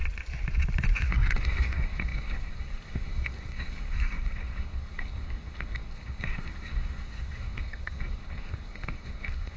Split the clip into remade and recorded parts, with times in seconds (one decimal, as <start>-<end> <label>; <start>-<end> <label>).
0.0-1.1 recorded; 1.1-9.6 remade